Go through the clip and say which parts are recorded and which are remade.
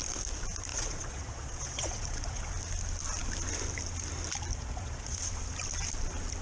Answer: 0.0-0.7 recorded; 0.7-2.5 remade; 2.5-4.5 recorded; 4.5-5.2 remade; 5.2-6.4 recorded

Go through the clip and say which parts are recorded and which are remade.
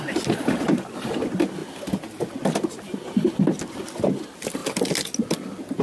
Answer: 0.0-5.8 recorded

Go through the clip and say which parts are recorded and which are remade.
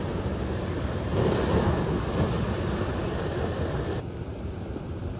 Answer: 0.0-1.1 remade; 1.1-4.2 recorded; 4.2-5.2 remade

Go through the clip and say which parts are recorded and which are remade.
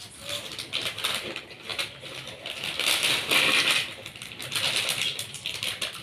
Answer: 0.0-6.0 recorded